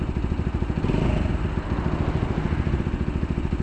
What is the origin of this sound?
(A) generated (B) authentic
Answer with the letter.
B